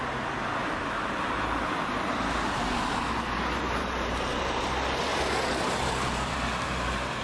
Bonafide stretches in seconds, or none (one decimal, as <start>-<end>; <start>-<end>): 0.0-0.6; 4.3-5.1